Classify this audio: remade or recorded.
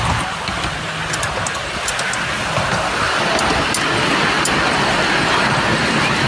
recorded